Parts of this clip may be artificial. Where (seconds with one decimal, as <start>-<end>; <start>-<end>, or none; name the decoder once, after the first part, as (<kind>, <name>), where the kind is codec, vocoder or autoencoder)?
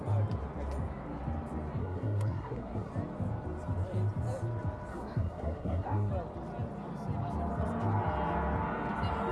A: 1.8-2.9 (codec, SNAC); 4.9-6.1